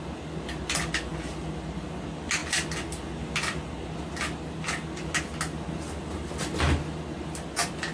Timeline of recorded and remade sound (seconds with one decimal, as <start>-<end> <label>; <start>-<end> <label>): 0.0-7.9 recorded